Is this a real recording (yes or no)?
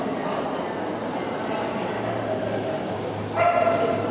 yes